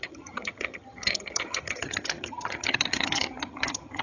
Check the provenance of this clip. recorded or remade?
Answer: remade